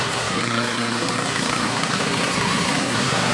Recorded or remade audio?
remade